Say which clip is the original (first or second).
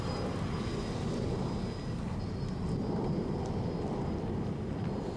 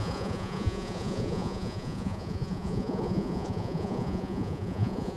first